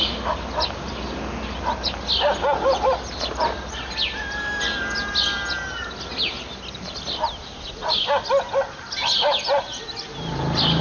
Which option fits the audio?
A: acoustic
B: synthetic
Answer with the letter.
A